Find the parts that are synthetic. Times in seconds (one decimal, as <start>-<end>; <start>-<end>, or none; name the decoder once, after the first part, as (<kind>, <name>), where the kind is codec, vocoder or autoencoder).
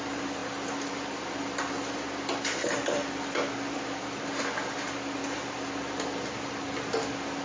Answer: none